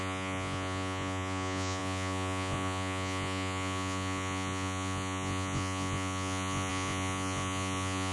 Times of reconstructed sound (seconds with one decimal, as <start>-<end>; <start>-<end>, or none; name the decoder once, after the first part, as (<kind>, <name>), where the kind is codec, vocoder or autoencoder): 0.0-8.1 (vocoder, Vocos)